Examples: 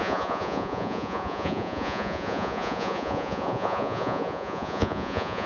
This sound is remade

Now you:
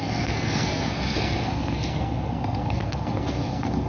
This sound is remade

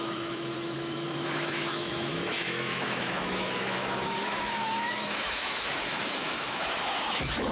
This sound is remade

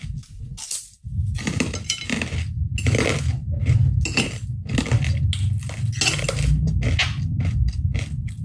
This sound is recorded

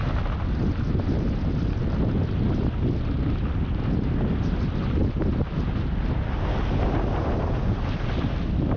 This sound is recorded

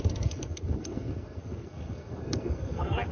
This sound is remade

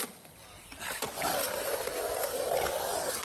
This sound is recorded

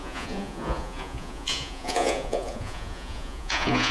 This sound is remade